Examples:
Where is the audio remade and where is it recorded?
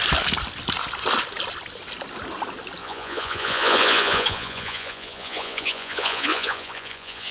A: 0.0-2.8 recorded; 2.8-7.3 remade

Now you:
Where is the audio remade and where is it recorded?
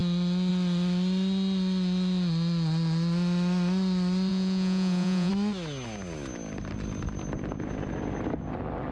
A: 0.0-4.3 recorded; 4.3-5.3 remade; 5.3-8.9 recorded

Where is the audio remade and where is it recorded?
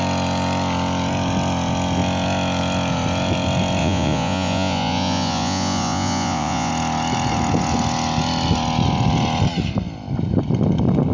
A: 0.0-3.8 recorded; 3.8-6.7 remade; 6.7-11.1 recorded